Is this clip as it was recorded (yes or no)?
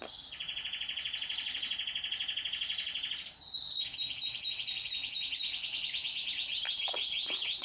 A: yes